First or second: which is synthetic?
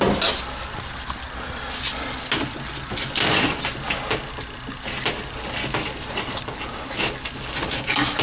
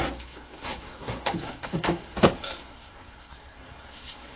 second